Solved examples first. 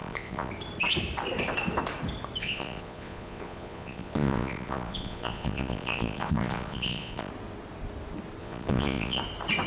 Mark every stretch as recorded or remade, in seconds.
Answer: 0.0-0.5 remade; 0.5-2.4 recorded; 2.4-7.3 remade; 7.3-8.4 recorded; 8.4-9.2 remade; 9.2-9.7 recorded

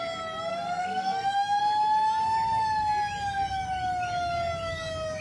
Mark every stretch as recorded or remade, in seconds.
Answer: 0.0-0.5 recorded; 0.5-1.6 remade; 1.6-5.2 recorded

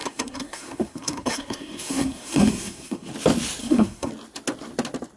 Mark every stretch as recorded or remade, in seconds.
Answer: 0.0-3.1 remade; 3.1-3.6 recorded; 3.6-4.1 remade; 4.1-5.2 recorded

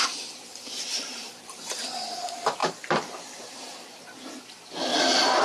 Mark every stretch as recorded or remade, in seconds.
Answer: 0.0-0.5 recorded; 0.5-2.1 remade; 2.1-2.6 recorded; 2.6-4.0 remade; 4.0-5.4 recorded

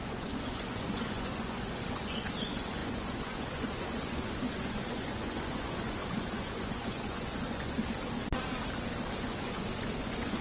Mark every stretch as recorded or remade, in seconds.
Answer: 0.0-7.8 remade; 7.8-9.2 recorded; 9.2-10.4 remade

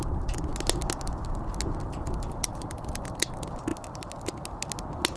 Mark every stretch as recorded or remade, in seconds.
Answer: 0.0-5.2 recorded